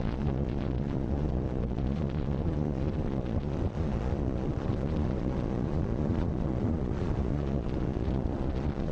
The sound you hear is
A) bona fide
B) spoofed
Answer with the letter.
B